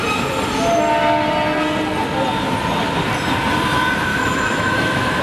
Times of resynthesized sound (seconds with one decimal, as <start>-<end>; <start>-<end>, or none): 4.1-5.2